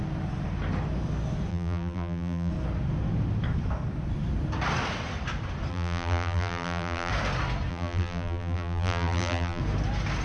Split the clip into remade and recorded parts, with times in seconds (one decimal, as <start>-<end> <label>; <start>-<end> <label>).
0.0-1.5 recorded; 1.5-2.5 remade; 2.5-5.7 recorded; 5.7-7.1 remade; 7.1-7.7 recorded; 7.7-9.6 remade; 9.6-10.2 recorded